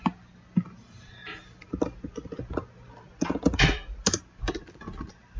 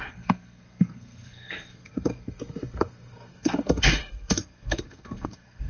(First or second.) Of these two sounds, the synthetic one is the second